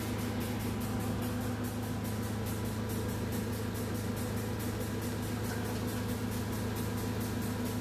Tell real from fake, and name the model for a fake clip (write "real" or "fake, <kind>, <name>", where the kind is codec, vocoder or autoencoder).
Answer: real